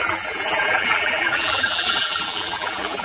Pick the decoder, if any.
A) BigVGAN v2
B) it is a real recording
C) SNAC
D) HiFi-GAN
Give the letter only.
A